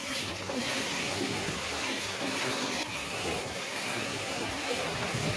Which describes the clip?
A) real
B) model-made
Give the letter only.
B